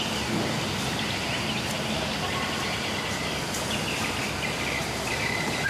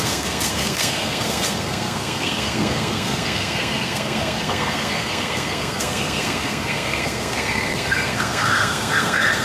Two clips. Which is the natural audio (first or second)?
first